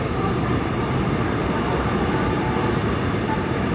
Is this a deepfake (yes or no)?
yes